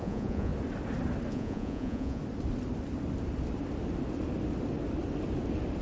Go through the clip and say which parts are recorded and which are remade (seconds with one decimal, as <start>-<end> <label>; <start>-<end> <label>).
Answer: 0.0-0.5 remade; 0.5-1.3 recorded; 1.3-2.2 remade; 2.2-5.8 recorded